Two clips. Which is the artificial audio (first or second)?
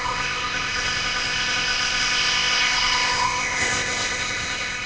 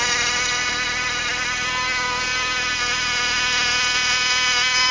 first